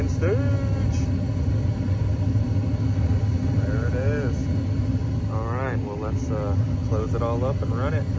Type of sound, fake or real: real